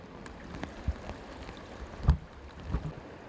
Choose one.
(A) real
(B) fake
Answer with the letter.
A